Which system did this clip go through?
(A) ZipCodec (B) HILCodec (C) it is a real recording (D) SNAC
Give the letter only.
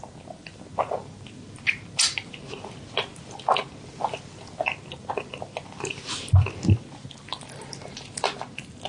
C